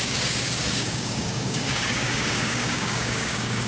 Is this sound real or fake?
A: fake